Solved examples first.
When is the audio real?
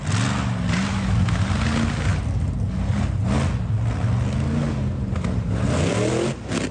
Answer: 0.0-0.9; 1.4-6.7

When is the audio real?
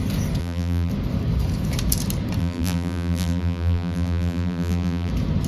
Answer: 0.0-0.4; 0.9-2.4; 5.1-5.5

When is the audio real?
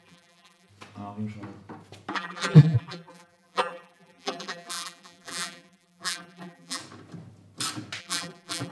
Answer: 0.7-2.1; 6.8-8.0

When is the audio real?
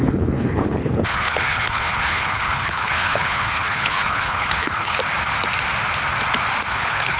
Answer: 5.0-6.7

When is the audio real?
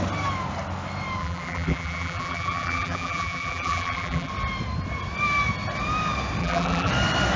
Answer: 0.0-1.2; 4.3-6.4; 6.9-7.4